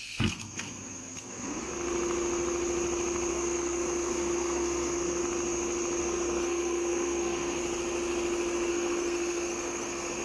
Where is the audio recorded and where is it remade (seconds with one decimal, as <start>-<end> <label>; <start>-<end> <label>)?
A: 0.0-1.7 remade; 1.7-3.3 recorded; 3.3-5.2 remade; 5.2-6.0 recorded; 6.0-7.6 remade; 7.6-8.7 recorded; 8.7-10.2 remade